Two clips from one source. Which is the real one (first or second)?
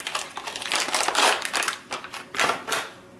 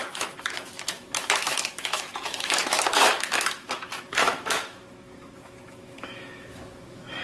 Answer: first